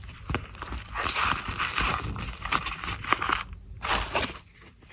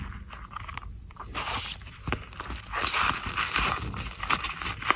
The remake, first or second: first